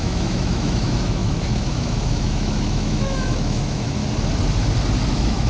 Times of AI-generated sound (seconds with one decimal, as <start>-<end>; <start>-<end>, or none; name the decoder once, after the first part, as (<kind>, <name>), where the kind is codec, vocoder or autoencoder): 0.0-4.0 (autoencoder, DAC-VAE); 5.1-5.5